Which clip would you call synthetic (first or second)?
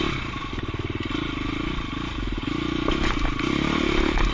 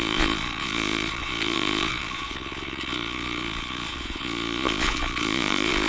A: second